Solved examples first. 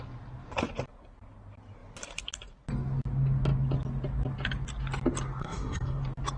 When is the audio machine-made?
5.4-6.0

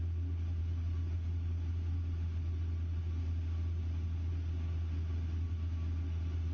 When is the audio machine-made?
none

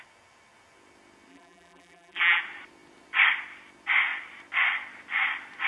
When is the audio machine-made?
1.3-2.4

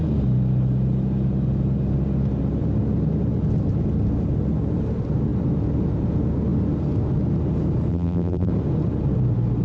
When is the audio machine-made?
7.9-8.5

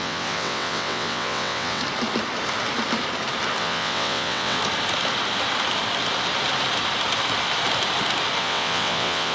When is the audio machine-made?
0.0-1.8; 3.6-4.6; 8.4-9.3